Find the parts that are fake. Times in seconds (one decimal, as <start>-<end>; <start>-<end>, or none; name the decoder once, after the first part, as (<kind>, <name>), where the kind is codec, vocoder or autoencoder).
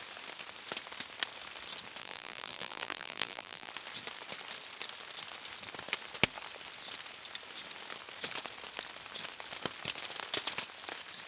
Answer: 2.0-3.7 (vocoder, BigVGAN v2)